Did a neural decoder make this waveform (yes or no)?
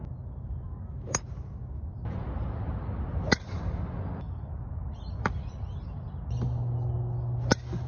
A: no